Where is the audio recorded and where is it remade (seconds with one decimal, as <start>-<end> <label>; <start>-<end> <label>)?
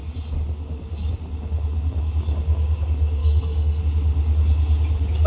0.0-3.2 recorded; 3.2-3.8 remade; 3.8-5.3 recorded